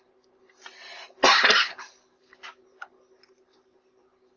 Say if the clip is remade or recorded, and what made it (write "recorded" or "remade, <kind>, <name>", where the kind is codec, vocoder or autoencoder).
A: recorded